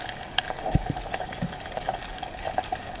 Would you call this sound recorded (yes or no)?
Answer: no